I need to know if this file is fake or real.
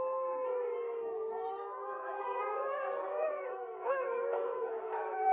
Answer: fake